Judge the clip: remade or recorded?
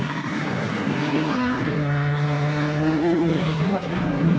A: remade